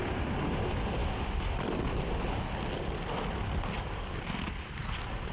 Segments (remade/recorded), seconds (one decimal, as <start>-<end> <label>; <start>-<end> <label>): 0.0-5.3 recorded